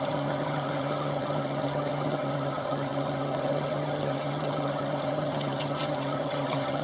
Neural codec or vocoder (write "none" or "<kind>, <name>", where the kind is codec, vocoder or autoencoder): vocoder, HiFi-GAN